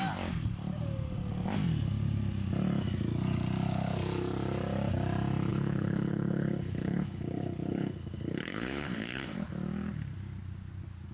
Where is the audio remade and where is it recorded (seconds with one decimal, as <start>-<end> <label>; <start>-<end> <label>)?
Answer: 0.0-5.5 recorded; 5.5-9.5 remade; 9.5-11.1 recorded